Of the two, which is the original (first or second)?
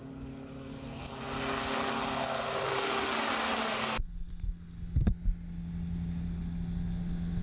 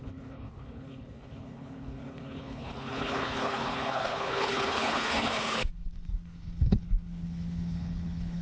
first